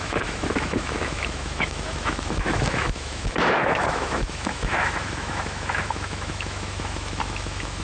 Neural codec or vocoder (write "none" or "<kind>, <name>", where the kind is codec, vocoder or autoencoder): autoencoder, DAC-VAE